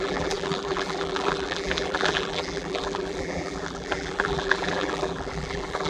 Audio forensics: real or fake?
fake